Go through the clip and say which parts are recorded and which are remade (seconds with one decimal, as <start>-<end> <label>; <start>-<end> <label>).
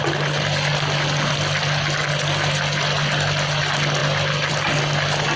0.0-5.4 recorded